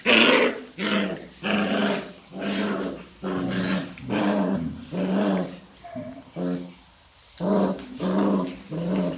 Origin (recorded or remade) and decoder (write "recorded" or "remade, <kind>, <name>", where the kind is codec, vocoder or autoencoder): recorded